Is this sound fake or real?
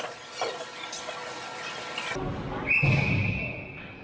real